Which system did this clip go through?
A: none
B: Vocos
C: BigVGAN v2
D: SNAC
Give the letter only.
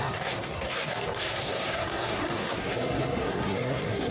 D